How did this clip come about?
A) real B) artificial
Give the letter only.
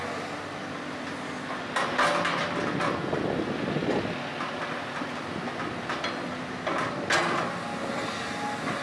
A